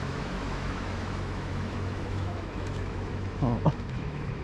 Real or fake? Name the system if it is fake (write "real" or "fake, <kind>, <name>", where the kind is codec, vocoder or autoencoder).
fake, autoencoder, DAC-VAE